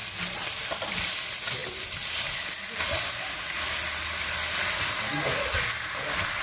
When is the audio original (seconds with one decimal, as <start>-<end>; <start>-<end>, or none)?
0.0-6.4